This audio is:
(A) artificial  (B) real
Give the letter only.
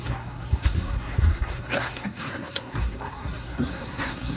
A